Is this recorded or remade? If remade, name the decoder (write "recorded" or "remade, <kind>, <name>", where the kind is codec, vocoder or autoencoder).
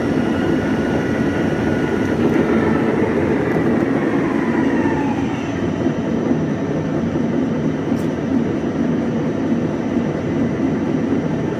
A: remade, vocoder, BigVGAN v2